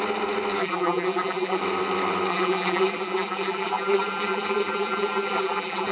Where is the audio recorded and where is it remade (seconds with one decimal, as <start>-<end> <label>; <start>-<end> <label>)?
0.0-0.6 recorded; 0.6-1.6 remade; 1.6-2.3 recorded; 2.3-5.9 remade